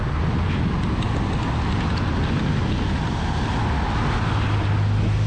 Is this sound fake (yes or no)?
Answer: no